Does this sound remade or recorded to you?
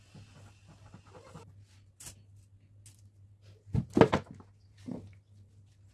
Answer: recorded